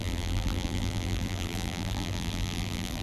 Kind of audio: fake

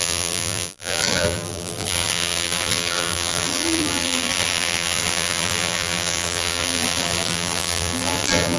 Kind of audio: fake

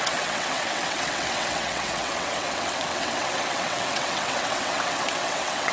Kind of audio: fake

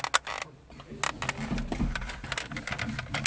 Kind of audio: real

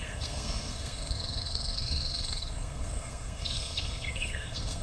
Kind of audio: fake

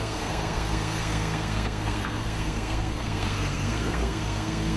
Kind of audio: fake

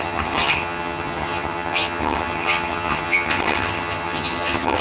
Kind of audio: fake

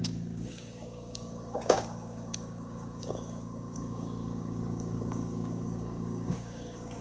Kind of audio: fake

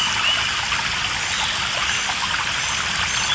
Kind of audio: real